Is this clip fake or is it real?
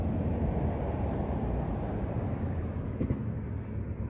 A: fake